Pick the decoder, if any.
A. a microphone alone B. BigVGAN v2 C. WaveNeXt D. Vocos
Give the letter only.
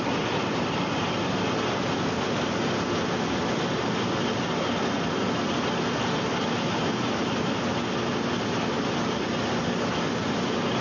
A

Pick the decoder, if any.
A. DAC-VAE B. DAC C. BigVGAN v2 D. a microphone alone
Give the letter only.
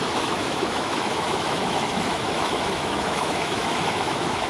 A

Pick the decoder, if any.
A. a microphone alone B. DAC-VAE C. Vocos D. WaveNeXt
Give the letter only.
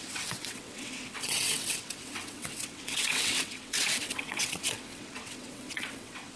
D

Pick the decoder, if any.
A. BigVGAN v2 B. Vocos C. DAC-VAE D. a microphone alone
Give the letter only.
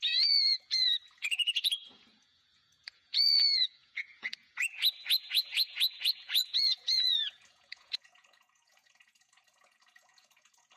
B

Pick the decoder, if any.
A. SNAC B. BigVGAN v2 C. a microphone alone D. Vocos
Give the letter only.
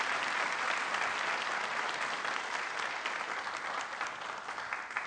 C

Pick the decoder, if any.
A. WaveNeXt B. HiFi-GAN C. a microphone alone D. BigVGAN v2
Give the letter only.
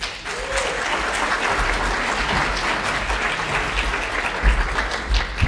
C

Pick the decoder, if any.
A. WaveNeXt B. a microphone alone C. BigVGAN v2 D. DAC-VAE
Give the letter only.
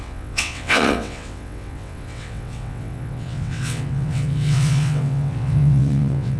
A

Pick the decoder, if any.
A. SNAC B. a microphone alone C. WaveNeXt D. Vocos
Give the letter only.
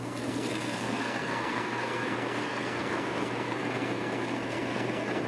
A